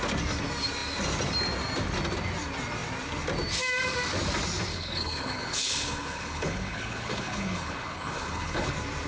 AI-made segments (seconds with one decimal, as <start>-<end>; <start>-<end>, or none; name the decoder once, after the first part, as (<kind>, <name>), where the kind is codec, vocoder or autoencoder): 4.7-8.7 (codec, HILCodec)